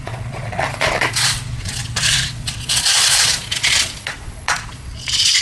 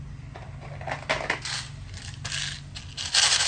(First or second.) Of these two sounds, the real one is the second